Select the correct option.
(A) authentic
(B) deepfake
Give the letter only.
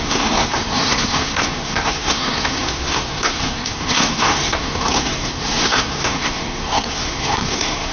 B